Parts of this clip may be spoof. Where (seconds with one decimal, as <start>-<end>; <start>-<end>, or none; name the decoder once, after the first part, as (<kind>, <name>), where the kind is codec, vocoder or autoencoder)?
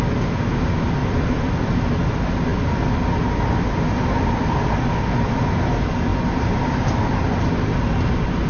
1.0-1.5 (vocoder, BigVGAN v2); 6.1-6.9